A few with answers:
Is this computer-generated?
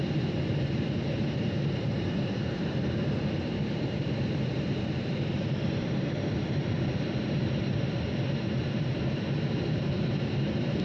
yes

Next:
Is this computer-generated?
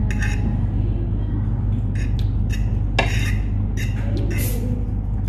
no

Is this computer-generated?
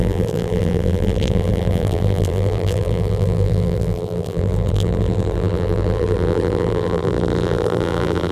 yes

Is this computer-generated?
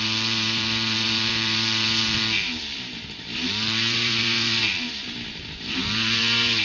yes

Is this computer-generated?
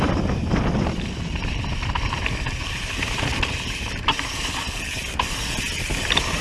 yes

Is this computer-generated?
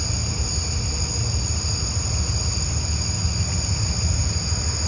no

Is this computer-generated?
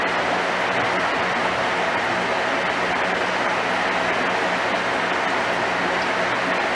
no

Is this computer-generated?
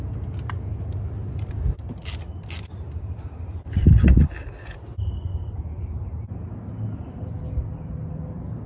no